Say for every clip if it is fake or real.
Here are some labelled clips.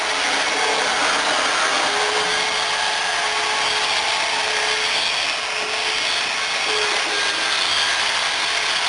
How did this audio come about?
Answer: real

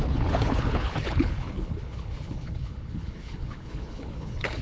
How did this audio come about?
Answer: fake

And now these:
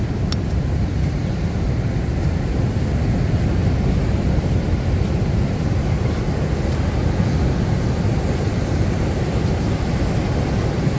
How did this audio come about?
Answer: real